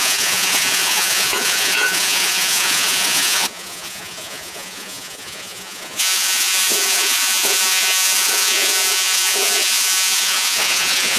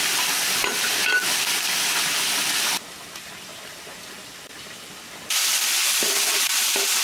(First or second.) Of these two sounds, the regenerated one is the first